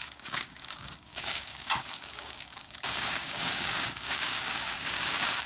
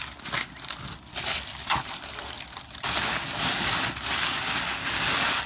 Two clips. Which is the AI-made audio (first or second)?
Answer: first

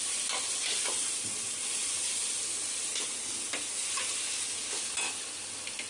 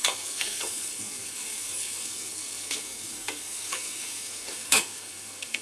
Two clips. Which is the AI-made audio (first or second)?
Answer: second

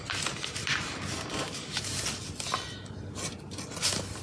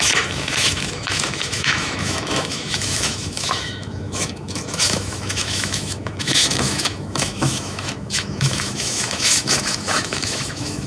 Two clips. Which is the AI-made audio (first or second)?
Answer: second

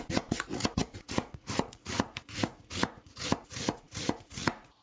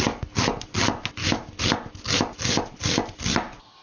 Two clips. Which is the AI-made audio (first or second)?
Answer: first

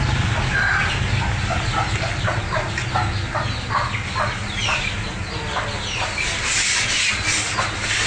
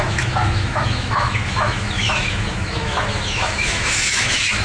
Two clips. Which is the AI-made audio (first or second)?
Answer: second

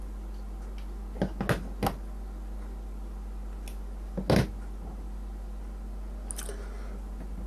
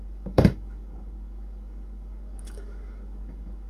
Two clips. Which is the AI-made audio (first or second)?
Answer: second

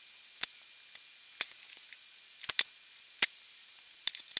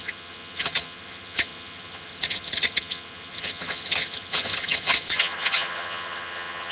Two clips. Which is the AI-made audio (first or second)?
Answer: second